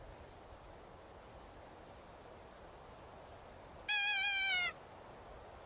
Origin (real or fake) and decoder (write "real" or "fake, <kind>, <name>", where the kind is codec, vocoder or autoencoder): real